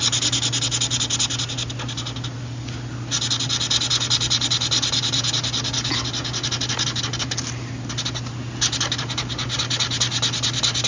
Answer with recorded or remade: recorded